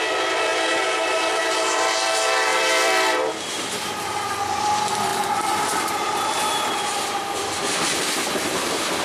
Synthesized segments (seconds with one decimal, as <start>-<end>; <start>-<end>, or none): 0.0-9.0